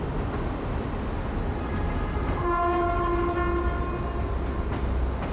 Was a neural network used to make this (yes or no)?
no